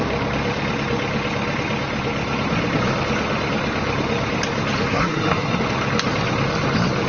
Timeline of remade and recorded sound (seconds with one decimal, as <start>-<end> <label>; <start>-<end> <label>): 0.0-4.9 recorded; 4.9-5.6 remade; 5.6-7.1 recorded